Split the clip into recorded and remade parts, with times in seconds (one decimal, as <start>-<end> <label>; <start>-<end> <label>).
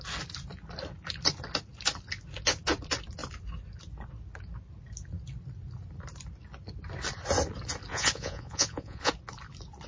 0.0-7.9 recorded; 7.9-9.1 remade; 9.1-9.9 recorded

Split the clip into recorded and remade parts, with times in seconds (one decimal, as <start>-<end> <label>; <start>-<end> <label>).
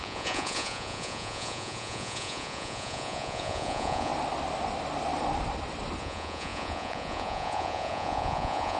0.0-4.1 remade; 4.1-6.0 recorded; 6.0-8.8 remade